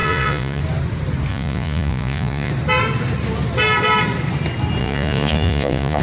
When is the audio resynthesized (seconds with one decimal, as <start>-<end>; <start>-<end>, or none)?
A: 0.0-0.6; 1.3-2.5; 4.8-6.0